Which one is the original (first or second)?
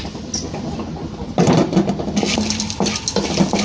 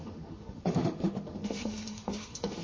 first